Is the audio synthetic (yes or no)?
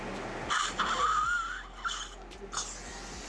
no